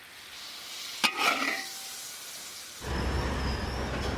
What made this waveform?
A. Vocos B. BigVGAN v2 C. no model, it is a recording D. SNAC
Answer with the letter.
C